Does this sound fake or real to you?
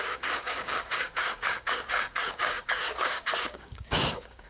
fake